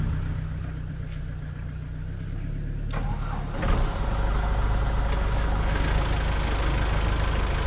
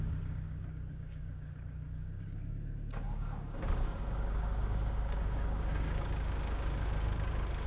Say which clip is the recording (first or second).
first